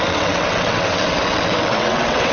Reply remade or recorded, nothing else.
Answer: remade